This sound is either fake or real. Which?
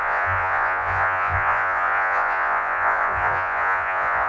fake